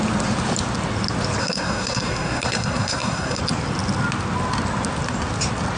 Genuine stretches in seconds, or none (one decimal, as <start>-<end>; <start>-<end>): 0.0-1.4; 3.4-5.8

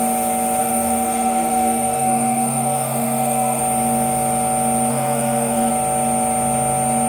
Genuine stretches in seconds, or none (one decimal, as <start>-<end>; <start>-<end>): 0.0-0.6; 3.6-4.9; 5.7-7.1

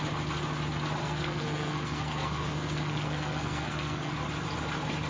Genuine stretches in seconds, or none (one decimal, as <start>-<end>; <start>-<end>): 0.0-1.0; 4.1-5.1

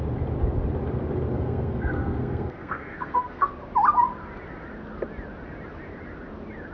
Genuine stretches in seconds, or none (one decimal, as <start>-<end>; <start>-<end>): 0.0-1.3; 3.5-6.7

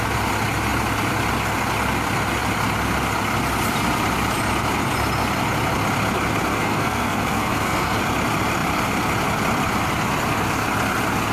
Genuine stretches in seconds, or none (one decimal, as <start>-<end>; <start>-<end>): 0.0-6.5; 8.0-11.3

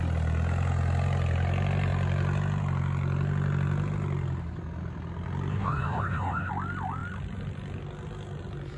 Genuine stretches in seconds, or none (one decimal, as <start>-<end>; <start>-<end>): 0.0-5.5; 6.5-8.8

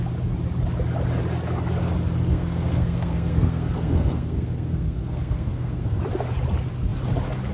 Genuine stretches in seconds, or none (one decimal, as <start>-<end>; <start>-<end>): 0.0-2.3; 6.0-7.5